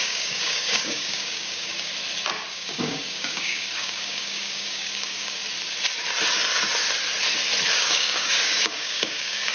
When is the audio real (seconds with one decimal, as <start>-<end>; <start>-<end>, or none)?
1.9-2.5; 5.4-7.7